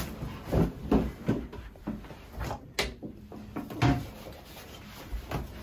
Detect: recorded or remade recorded